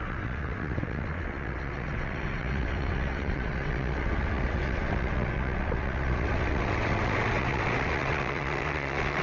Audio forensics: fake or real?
fake